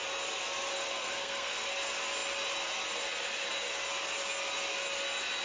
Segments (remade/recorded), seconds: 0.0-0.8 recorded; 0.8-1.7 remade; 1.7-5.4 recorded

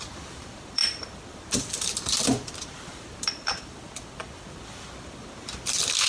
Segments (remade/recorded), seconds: 0.0-6.1 remade

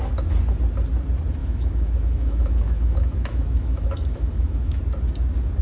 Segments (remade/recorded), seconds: 0.0-1.4 recorded; 1.4-4.8 remade; 4.8-5.6 recorded

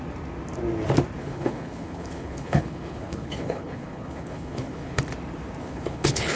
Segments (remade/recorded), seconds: 0.0-1.2 recorded; 1.2-5.0 remade; 5.0-5.6 recorded; 5.6-6.4 remade

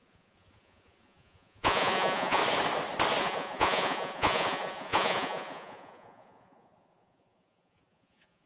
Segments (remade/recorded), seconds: 0.0-2.4 remade; 2.4-3.2 recorded; 3.2-8.5 remade

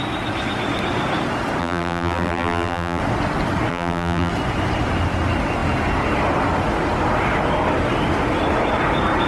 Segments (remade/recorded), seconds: 0.0-1.6 recorded; 1.6-3.0 remade; 3.0-3.7 recorded; 3.7-4.3 remade; 4.3-9.3 recorded

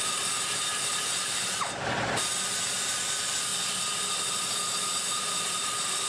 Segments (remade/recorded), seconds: 0.0-6.1 recorded

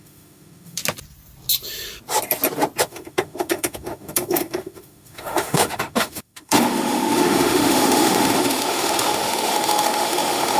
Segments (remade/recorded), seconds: 0.0-0.8 remade; 0.8-2.8 recorded; 2.8-10.6 remade